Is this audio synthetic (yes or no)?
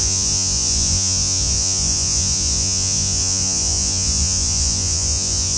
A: yes